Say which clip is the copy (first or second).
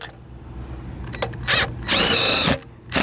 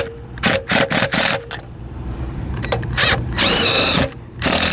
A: second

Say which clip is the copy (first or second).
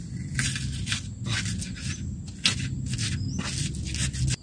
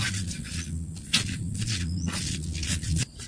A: second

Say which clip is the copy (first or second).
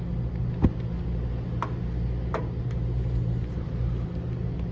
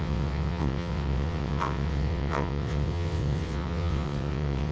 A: second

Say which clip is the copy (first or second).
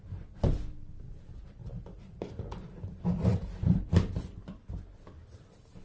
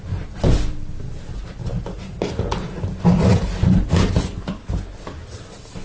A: first